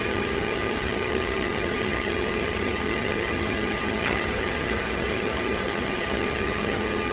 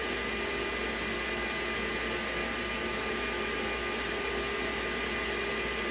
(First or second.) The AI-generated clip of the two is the first